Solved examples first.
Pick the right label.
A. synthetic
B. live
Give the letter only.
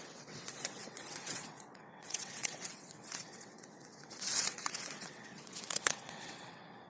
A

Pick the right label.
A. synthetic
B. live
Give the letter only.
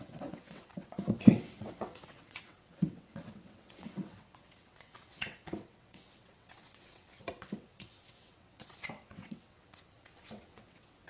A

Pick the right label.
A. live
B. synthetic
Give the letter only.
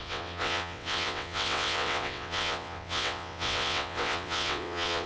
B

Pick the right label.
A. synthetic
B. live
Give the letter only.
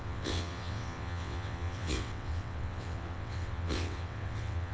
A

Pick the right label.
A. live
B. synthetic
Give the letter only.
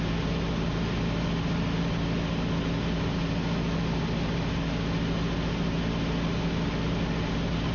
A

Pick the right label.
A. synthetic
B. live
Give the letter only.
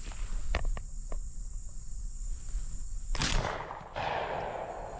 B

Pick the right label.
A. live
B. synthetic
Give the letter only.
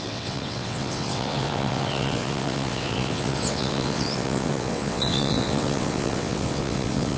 B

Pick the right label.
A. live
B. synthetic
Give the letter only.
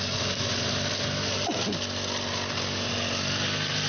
A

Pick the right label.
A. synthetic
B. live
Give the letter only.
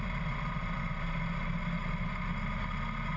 B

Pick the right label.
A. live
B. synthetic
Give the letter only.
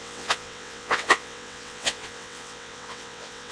B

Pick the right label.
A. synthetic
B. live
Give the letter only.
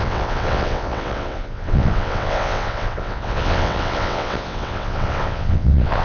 A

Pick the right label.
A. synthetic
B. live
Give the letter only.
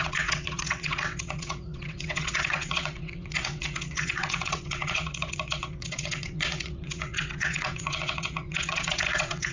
A